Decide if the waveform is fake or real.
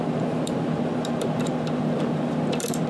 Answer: fake